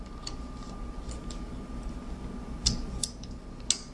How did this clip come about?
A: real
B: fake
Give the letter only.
A